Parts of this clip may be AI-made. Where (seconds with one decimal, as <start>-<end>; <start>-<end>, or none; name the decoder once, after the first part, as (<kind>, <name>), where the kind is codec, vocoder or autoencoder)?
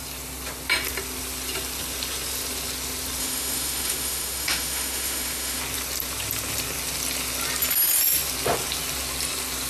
3.2-5.6 (autoencoder, DAC-VAE)